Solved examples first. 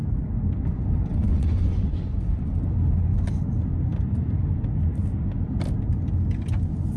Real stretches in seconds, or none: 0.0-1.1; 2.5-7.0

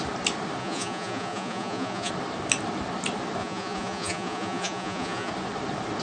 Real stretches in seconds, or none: 0.0-0.6; 2.1-3.4; 5.3-6.0